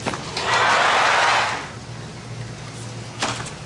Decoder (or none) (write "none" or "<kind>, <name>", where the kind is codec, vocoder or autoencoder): none